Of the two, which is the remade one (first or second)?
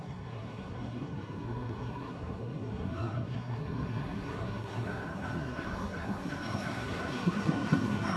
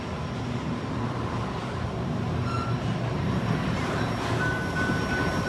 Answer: first